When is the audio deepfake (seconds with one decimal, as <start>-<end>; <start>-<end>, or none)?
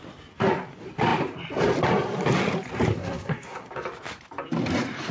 2.9-3.7